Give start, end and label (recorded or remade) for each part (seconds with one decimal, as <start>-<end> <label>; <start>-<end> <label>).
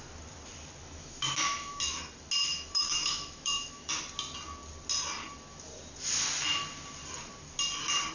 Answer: 0.0-0.8 recorded; 0.8-2.0 remade; 2.0-2.4 recorded; 2.4-3.9 remade; 3.9-8.1 recorded